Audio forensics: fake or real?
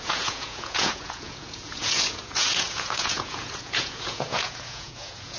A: fake